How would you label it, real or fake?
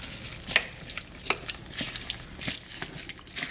real